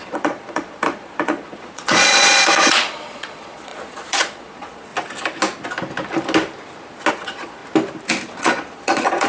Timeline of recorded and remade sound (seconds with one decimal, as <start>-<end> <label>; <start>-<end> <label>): 0.0-4.9 remade; 4.9-7.1 recorded; 7.1-7.6 remade; 7.6-8.4 recorded; 8.4-9.3 remade